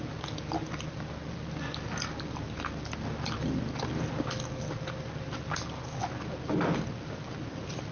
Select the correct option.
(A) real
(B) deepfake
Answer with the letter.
A